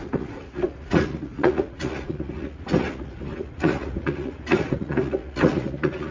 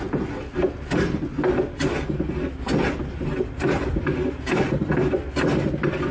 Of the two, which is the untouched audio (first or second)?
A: second